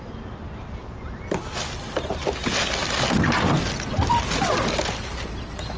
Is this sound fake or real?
real